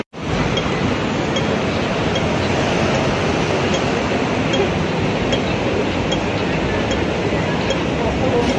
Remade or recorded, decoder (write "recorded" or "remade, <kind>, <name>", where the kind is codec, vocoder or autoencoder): recorded